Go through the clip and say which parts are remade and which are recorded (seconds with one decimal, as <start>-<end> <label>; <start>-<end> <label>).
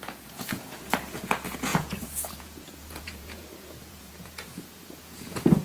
0.0-5.6 remade